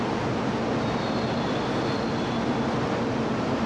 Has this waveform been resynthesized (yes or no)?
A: no